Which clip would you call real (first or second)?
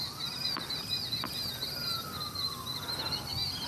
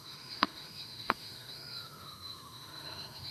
first